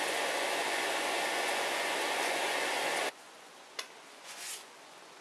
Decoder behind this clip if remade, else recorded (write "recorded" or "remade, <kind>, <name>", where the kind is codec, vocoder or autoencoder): remade, vocoder, Vocos